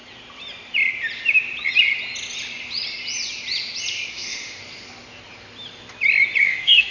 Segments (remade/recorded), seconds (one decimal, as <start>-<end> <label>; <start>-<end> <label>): 0.0-4.1 recorded; 4.1-4.6 remade; 4.6-6.4 recorded; 6.4-6.9 remade